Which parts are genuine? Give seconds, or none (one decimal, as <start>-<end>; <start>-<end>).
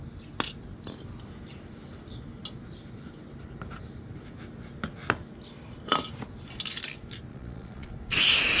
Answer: 0.0-7.3; 7.9-8.6